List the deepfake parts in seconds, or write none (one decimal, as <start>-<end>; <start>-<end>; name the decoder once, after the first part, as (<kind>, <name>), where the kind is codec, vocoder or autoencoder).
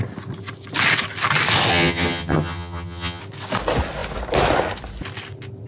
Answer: 1.7-3.2 (vocoder, HiFi-GAN)